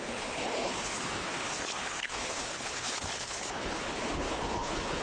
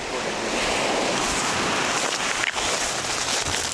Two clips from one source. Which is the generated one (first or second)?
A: first